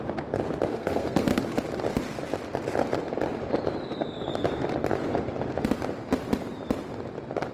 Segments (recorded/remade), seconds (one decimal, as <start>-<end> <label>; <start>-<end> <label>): 0.0-0.7 recorded; 0.7-1.4 remade; 1.4-7.5 recorded